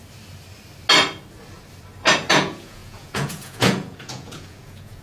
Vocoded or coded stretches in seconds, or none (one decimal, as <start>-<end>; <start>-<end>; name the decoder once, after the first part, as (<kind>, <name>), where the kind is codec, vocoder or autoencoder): 2.3-5.0 (vocoder, Vocos)